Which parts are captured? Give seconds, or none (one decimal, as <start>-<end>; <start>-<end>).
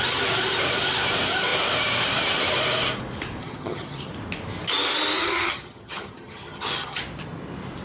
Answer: 0.0-3.4; 4.1-5.2; 7.0-7.8